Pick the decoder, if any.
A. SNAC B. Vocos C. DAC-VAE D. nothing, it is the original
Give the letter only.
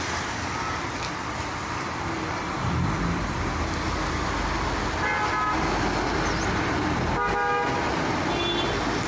D